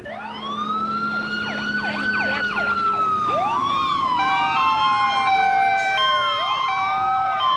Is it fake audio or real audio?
real